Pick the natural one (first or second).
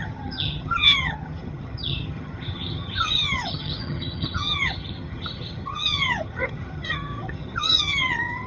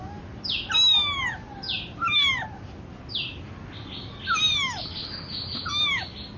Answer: second